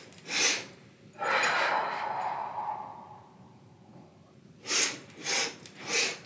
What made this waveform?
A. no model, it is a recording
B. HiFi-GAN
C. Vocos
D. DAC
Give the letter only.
A